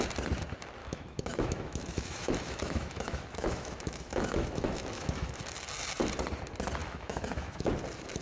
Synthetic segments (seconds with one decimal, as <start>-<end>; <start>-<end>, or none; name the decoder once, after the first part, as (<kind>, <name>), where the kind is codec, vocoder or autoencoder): 0.8-5.3 (autoencoder, DAC-VAE); 6.8-7.7